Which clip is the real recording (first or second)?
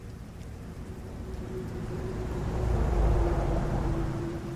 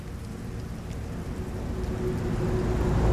second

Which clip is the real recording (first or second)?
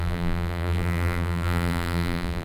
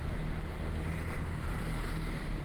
second